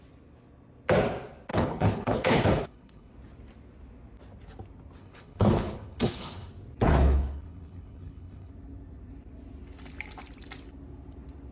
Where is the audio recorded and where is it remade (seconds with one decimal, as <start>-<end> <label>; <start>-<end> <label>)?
0.0-1.5 recorded; 1.5-3.1 remade; 3.1-5.0 recorded; 5.0-6.5 remade; 6.5-6.9 recorded; 6.9-8.5 remade; 8.5-11.5 recorded